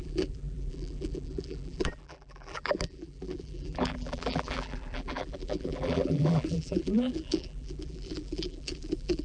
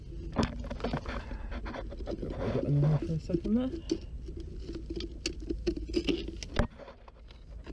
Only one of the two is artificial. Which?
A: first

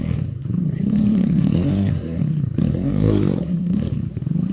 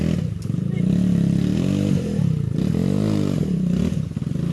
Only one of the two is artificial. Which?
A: first